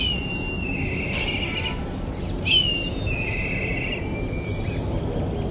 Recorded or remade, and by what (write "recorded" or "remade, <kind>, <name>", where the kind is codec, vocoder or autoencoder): recorded